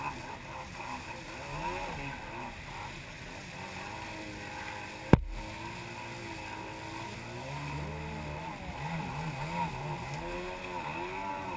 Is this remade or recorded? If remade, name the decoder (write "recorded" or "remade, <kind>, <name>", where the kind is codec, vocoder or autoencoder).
recorded